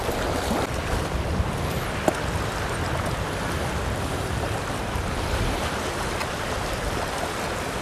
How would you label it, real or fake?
real